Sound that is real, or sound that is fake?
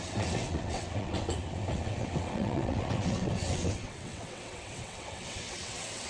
fake